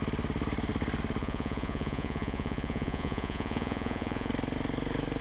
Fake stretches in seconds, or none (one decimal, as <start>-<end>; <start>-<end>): 1.2-4.3